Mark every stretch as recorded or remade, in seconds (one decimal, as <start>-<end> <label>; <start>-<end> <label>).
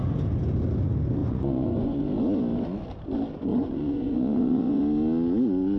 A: 0.0-1.2 recorded; 1.2-2.0 remade; 2.0-3.5 recorded; 3.5-4.8 remade; 4.8-5.8 recorded